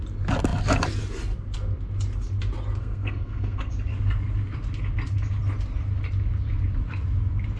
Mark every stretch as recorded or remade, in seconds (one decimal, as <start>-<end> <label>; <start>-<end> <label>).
0.0-2.8 recorded; 2.8-3.7 remade; 3.7-7.6 recorded